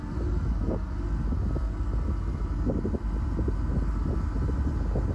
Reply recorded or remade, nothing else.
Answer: recorded